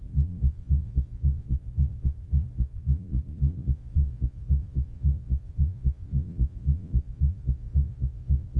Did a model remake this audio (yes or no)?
yes